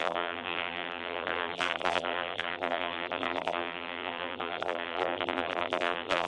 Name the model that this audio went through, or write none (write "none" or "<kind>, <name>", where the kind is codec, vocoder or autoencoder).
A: vocoder, BigVGAN v2